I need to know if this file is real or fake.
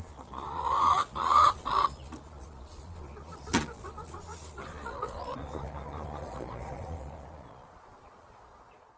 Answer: fake